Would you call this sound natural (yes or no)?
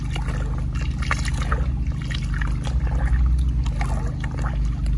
yes